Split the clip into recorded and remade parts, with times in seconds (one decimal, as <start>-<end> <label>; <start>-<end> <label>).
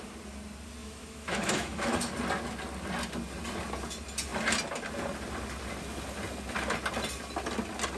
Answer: 0.0-0.8 recorded; 0.8-2.1 remade; 2.1-8.0 recorded